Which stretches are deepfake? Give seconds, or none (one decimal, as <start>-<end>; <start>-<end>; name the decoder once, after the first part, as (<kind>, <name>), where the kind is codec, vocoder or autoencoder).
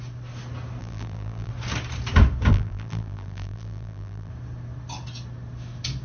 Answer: 0.8-1.5 (vocoder, BigVGAN v2); 2.5-4.3